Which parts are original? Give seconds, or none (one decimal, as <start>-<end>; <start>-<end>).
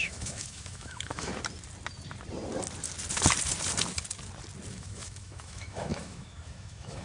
1.3-4.7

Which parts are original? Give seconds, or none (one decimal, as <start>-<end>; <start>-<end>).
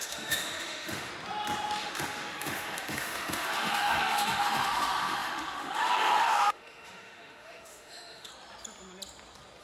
1.1-1.8; 8.3-9.6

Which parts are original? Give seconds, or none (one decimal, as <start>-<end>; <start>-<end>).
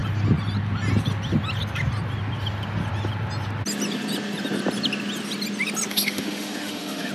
0.0-5.9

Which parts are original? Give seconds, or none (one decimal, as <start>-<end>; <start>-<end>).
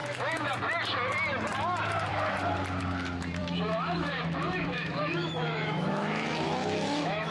0.6-3.4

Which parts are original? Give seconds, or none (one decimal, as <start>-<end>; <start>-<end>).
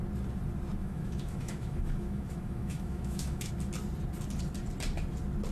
0.0-0.8; 3.5-5.5